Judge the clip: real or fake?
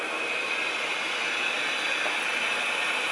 real